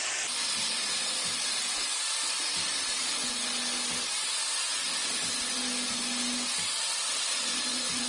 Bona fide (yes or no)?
yes